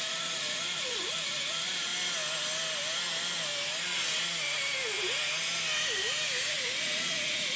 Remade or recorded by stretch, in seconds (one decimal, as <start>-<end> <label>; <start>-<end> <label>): 0.0-1.9 remade; 1.9-6.5 recorded; 6.5-7.6 remade